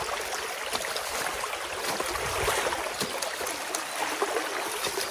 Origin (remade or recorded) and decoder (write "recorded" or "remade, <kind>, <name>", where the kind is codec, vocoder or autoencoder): recorded